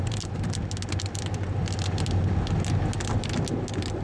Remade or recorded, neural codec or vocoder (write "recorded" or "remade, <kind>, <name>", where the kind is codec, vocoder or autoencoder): recorded